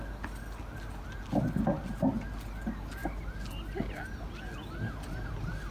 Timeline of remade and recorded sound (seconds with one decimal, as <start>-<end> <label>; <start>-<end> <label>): 0.0-5.7 recorded